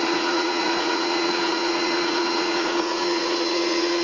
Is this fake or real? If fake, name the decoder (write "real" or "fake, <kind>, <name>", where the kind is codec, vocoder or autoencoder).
fake, vocoder, Vocos